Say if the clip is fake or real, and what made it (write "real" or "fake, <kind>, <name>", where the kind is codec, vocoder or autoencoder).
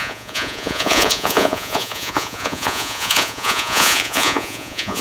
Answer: fake, vocoder, Vocos